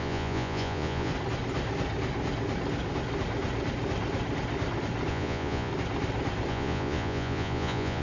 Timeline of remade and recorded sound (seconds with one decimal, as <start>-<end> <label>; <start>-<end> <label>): 0.0-1.1 remade; 1.1-5.1 recorded; 5.1-5.7 remade; 5.7-6.5 recorded; 6.5-8.0 remade